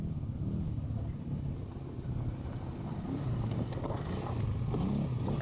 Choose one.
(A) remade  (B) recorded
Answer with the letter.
B